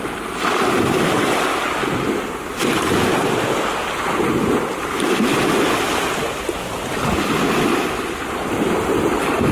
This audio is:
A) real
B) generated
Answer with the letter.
A